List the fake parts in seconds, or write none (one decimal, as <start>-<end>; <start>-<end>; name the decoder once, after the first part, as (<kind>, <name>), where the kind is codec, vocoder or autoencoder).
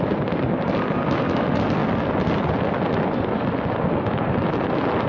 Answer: none